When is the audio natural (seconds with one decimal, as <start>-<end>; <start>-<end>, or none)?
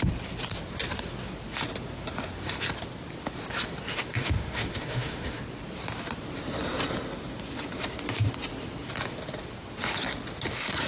0.0-3.9; 5.4-10.9